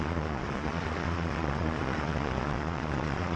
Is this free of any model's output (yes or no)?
no